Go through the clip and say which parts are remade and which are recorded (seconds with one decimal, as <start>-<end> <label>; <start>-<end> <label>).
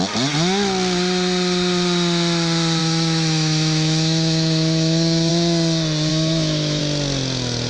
0.0-2.8 recorded; 2.8-5.3 remade; 5.3-6.1 recorded; 6.1-6.8 remade; 6.8-7.7 recorded